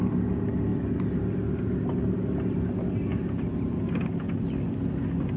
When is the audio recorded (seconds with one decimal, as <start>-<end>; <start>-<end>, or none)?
0.0-5.4